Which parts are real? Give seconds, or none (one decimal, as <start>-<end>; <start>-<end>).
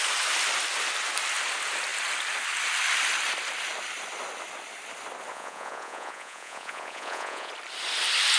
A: 0.0-5.3; 7.5-8.4